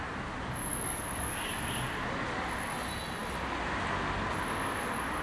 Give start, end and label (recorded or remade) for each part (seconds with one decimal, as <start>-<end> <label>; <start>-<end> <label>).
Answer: 0.0-0.7 recorded; 0.7-1.5 remade; 1.5-5.2 recorded